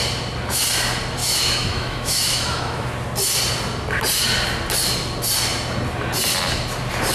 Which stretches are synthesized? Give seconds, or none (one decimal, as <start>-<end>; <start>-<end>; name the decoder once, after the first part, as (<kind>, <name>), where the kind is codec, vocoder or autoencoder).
1.2-2.9 (autoencoder, DAC-VAE)

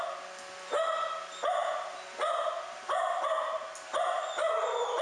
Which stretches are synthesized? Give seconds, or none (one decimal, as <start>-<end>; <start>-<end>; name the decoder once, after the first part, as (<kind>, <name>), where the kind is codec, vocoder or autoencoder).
none